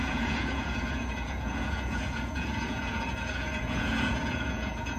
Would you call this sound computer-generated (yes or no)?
yes